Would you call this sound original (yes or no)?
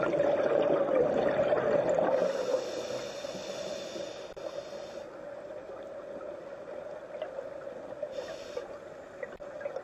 yes